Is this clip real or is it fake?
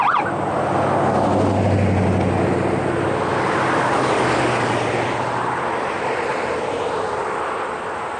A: real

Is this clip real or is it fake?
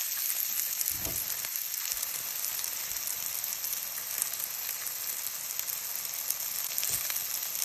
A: real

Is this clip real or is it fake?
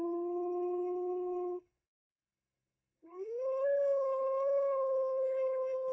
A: fake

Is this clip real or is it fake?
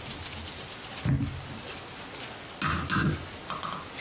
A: real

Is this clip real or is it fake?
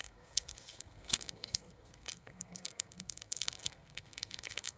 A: fake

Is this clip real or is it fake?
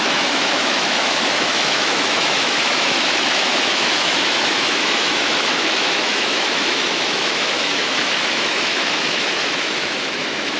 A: fake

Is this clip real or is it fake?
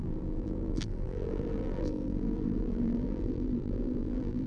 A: fake